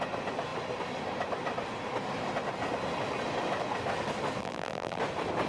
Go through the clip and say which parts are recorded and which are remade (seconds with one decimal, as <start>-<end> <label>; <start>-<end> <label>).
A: 0.0-4.4 recorded; 4.4-5.0 remade; 5.0-5.5 recorded